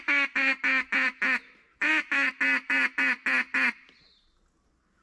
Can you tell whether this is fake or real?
real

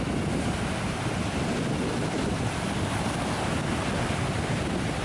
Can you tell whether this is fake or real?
real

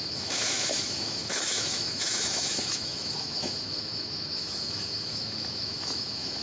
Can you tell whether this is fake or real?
fake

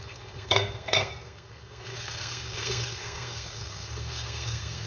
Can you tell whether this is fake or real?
fake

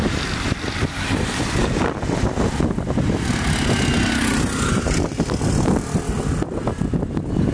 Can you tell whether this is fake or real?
real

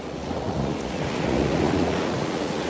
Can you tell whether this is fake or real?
fake